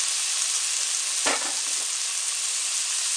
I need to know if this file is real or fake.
real